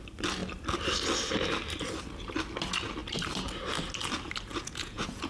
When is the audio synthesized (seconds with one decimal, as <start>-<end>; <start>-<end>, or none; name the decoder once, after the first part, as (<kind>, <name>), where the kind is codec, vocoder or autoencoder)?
4.5-5.3 (vocoder, Vocos)

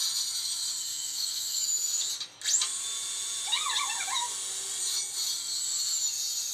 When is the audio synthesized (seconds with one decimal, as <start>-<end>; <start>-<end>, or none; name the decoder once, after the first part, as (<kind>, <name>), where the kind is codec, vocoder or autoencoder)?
0.9-2.1 (autoencoder, DAC-VAE)

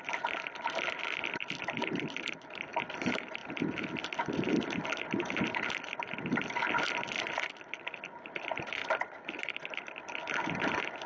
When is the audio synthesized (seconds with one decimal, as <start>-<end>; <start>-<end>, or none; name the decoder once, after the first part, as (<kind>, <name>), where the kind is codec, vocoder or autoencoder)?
1.8-2.7 (vocoder, BigVGAN v2); 8.8-9.4

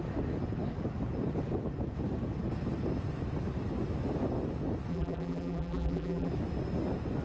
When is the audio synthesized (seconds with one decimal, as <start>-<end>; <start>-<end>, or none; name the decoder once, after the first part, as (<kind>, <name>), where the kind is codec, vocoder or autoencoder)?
4.9-6.3 (vocoder, BigVGAN v2)

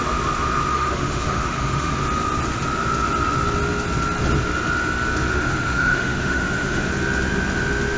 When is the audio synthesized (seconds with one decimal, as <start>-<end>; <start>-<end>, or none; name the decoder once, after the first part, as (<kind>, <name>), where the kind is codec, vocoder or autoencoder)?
0.7-1.9 (autoencoder, DAC-VAE); 5.3-6.9

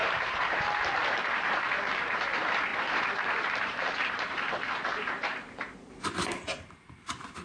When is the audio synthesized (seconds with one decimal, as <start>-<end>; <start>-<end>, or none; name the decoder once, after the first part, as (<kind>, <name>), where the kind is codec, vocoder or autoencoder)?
0.0-7.4 (vocoder, BigVGAN v2)

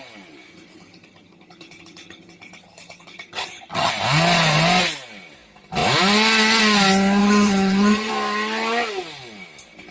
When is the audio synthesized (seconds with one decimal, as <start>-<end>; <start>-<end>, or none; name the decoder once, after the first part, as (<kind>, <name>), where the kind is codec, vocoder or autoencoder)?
0.5-3.9 (vocoder, HiFi-GAN); 7.2-8.1

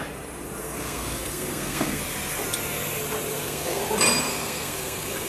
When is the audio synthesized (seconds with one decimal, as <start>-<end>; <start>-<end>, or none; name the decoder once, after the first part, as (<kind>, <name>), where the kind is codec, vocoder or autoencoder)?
0.6-2.0 (codec, SNAC); 3.3-3.8; 4.3-5.3